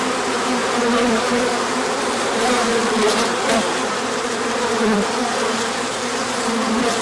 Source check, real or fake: fake